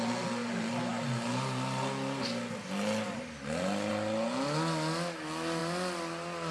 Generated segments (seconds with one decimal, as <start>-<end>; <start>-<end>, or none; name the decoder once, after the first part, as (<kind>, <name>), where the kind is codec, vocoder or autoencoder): none